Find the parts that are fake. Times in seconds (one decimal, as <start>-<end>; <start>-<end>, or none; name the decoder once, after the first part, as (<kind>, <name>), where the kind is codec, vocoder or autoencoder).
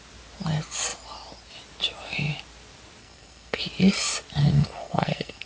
3.0-3.6 (codec, SNAC); 4.4-5.5